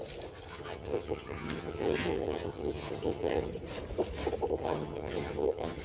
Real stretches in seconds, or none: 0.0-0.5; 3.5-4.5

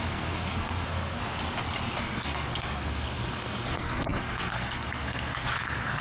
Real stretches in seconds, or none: 1.2-1.9

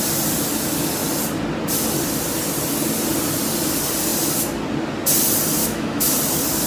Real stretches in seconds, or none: 0.0-5.6; 6.1-6.7

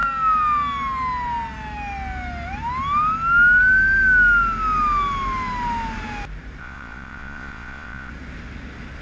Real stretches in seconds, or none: 0.0-6.6; 8.1-9.0

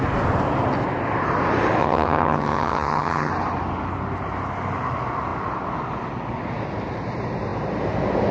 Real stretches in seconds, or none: 0.0-1.8; 3.3-8.3

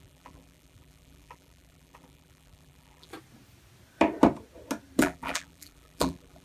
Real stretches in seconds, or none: 3.1-5.0